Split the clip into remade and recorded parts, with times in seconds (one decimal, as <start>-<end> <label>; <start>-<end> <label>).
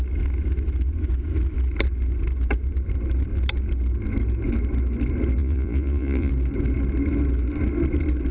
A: 0.0-5.4 recorded; 5.4-6.3 remade; 6.3-8.3 recorded